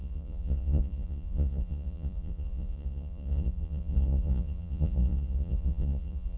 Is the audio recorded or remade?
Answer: remade